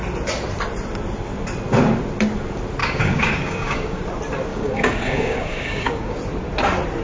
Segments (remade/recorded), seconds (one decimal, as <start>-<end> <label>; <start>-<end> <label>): 0.0-2.8 recorded; 2.8-4.0 remade; 4.0-4.5 recorded; 4.5-6.2 remade; 6.2-7.0 recorded